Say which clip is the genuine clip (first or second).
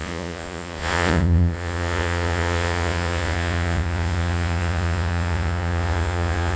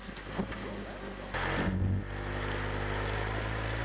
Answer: second